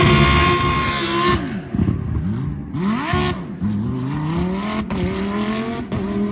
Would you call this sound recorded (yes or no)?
yes